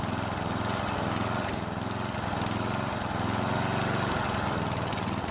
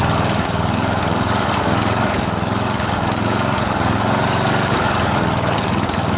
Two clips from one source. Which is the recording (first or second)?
first